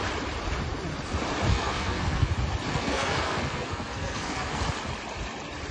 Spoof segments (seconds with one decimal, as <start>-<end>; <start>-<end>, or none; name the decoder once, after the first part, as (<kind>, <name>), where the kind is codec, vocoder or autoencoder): 1.5-2.3 (codec, SNAC); 2.7-4.6